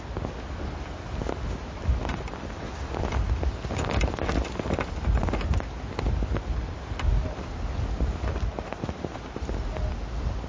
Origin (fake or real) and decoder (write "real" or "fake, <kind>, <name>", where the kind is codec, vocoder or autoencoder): real